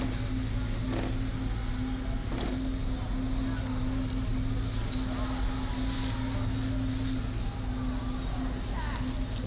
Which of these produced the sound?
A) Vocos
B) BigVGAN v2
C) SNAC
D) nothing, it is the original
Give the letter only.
D